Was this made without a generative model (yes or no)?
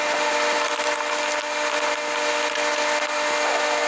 yes